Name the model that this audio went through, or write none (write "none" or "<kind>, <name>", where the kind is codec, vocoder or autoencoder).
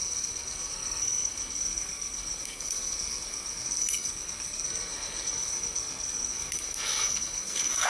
codec, SNAC